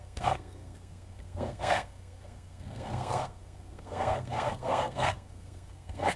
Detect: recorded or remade remade